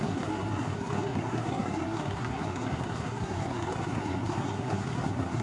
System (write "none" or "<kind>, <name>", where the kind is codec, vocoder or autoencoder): codec, SNAC